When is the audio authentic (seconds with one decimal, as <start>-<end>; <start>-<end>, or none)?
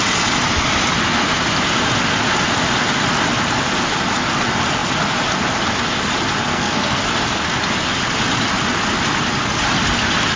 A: 0.0-6.5; 7.0-10.4